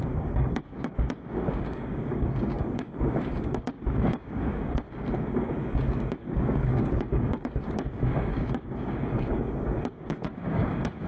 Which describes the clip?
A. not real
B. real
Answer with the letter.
A